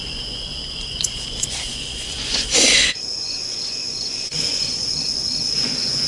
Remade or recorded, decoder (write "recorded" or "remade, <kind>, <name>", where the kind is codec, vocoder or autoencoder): remade, vocoder, Vocos